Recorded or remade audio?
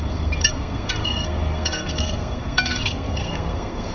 remade